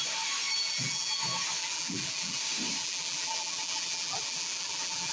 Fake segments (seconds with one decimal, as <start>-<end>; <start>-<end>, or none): 0.6-1.2; 1.6-2.4; 2.8-5.1